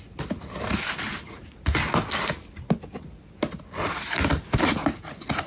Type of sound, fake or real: real